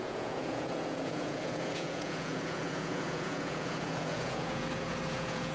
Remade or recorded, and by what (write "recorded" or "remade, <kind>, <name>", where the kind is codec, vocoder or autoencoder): remade, vocoder, Vocos